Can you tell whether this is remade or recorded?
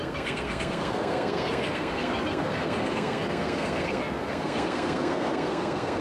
remade